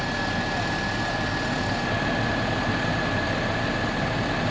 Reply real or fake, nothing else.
real